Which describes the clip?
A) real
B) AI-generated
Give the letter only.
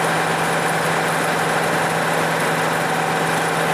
A